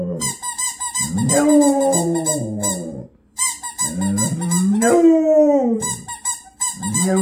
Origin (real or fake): fake